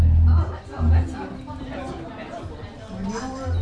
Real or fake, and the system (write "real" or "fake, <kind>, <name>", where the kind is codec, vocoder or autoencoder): real